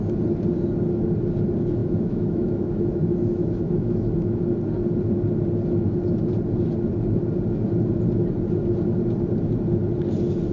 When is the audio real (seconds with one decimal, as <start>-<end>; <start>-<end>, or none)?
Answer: 0.0-1.8; 4.4-10.5

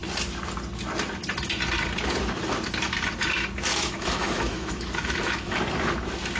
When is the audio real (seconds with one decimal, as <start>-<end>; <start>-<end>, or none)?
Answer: 0.0-3.7; 5.6-6.4